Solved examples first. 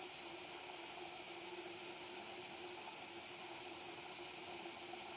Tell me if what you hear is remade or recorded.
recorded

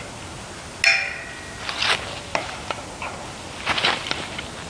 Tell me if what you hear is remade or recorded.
recorded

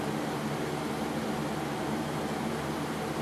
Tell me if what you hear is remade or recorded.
recorded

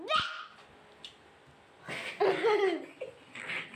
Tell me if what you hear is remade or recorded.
recorded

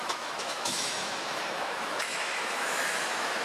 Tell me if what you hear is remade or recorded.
remade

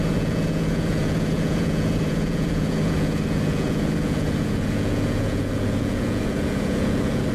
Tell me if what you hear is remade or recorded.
remade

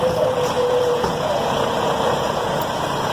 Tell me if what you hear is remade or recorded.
remade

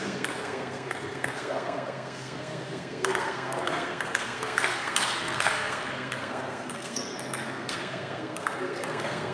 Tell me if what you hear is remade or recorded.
remade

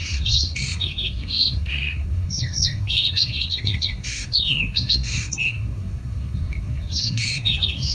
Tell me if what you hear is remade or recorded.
remade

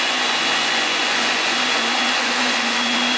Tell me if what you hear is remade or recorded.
remade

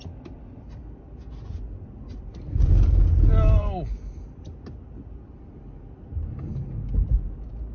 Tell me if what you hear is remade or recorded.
recorded